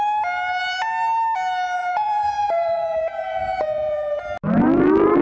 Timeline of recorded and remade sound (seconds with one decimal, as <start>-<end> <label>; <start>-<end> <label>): 0.0-1.8 recorded; 1.8-4.2 remade; 4.2-5.2 recorded